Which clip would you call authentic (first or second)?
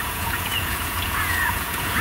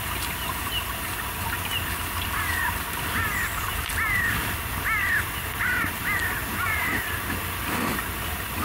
second